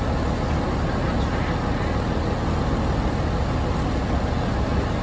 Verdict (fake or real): real